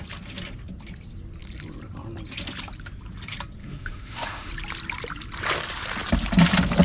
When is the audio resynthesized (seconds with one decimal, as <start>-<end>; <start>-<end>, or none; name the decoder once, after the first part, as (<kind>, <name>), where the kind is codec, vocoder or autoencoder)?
3.6-4.5 (autoencoder, DAC-VAE)